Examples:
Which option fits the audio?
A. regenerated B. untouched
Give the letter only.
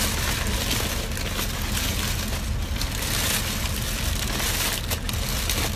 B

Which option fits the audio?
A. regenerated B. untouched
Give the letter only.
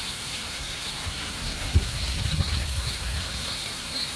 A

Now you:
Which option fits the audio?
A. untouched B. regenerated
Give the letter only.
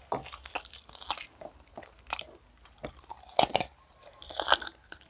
A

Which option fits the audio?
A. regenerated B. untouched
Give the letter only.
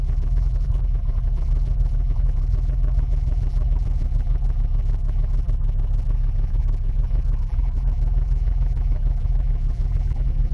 A